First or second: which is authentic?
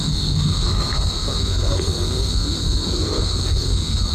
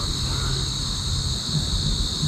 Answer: second